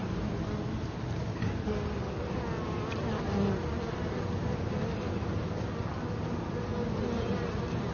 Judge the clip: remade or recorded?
recorded